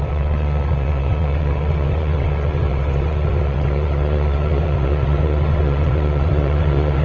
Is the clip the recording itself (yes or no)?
no